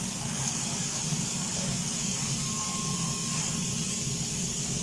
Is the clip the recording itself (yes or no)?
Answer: no